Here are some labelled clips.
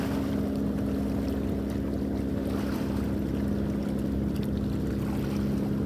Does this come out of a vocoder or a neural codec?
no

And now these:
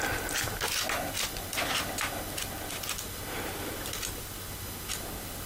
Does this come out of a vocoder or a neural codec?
no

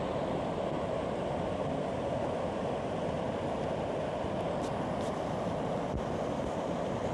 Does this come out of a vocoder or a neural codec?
no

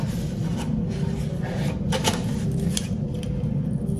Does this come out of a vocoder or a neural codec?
no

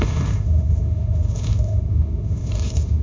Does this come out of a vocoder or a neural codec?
yes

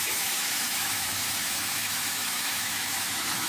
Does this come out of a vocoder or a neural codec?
yes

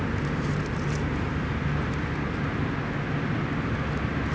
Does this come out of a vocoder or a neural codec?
no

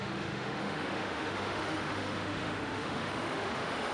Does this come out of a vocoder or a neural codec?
yes